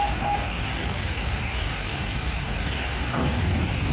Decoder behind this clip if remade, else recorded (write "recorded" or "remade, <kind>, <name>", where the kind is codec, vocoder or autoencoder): remade, codec, DAC